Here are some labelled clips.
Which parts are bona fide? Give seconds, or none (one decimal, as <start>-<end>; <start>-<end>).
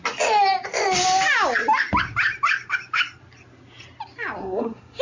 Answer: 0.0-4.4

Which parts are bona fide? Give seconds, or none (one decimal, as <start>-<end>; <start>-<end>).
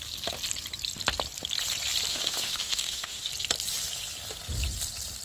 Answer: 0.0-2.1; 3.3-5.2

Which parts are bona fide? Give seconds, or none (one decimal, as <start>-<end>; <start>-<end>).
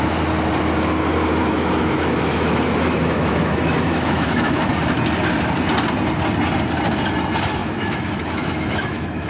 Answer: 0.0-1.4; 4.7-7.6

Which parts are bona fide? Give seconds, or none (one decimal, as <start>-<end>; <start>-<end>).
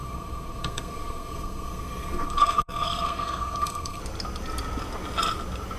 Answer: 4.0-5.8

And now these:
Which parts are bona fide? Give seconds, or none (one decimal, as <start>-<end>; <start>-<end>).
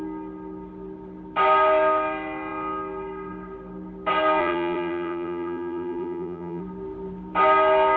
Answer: 0.0-4.4; 6.6-8.0